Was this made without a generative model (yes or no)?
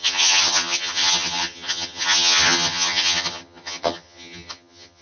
no